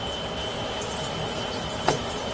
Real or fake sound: real